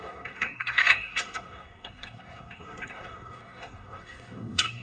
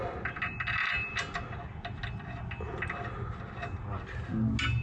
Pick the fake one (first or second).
first